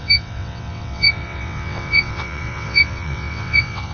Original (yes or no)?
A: no